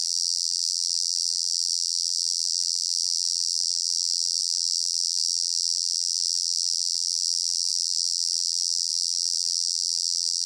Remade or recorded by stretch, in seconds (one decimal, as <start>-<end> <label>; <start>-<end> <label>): 0.0-10.5 remade